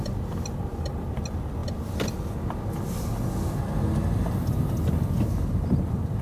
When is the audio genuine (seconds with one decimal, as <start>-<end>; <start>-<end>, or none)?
0.0-6.2